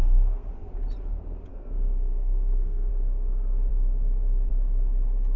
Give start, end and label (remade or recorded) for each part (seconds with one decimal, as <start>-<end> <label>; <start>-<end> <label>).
0.0-0.5 remade; 0.5-1.5 recorded; 1.5-2.9 remade; 2.9-5.4 recorded